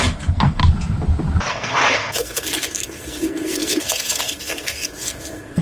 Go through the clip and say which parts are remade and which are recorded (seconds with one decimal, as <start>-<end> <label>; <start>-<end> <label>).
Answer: 0.0-0.6 remade; 0.6-1.5 recorded; 1.5-5.6 remade